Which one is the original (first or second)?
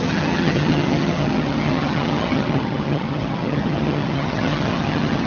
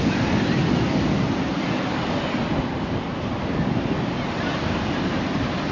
second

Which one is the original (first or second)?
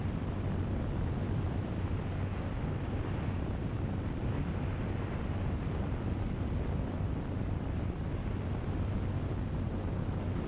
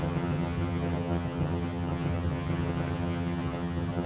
first